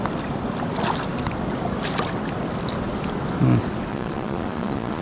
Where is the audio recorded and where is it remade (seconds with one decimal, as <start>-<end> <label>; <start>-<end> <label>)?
0.0-3.9 recorded; 3.9-5.0 remade